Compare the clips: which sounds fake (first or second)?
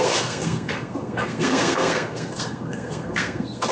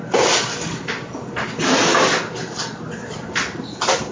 first